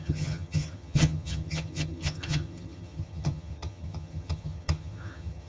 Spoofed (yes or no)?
yes